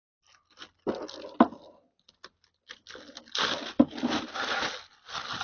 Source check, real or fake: real